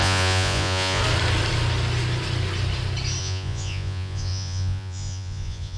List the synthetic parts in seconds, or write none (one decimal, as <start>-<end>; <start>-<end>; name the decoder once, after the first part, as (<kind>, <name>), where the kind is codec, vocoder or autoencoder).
0.0-1.0 (vocoder, Vocos); 3.2-5.8